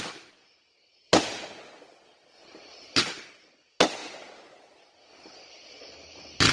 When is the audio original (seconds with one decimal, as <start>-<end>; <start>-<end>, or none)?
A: 0.0-6.5